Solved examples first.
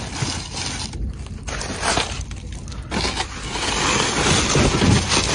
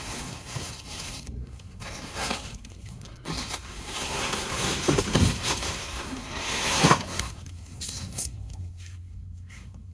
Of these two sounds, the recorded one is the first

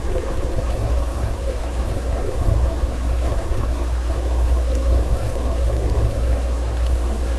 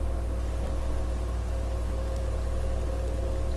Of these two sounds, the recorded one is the second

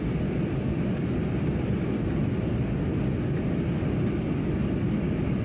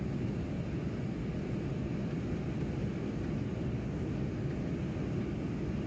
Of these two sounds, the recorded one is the second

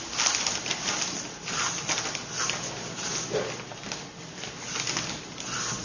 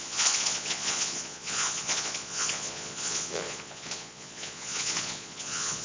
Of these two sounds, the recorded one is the first